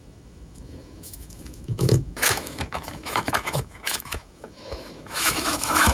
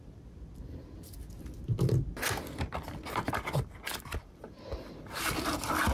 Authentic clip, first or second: second